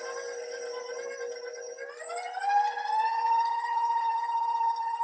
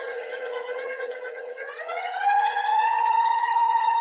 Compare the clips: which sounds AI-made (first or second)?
second